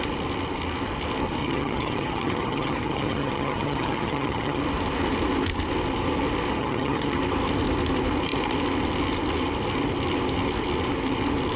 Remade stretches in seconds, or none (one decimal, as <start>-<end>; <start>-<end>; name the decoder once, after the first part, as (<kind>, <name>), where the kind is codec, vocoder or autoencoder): 1.4-4.6 (vocoder, HiFi-GAN); 6.6-7.2